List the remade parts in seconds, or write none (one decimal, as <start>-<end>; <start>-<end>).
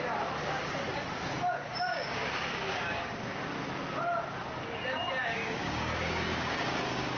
1.9-3.4; 5.2-7.2